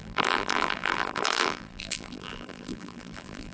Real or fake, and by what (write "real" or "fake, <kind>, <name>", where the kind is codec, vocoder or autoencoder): fake, vocoder, BigVGAN v2